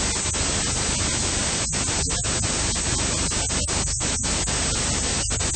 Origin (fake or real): real